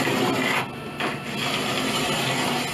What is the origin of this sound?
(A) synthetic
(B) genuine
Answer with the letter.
B